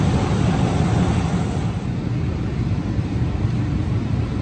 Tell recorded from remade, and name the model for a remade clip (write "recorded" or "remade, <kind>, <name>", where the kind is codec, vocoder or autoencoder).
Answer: recorded